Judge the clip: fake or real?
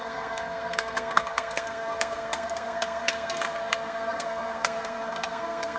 fake